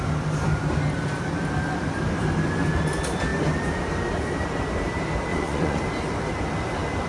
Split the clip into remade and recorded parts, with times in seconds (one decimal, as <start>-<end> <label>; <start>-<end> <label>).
0.0-5.3 recorded; 5.3-5.8 remade; 5.8-7.1 recorded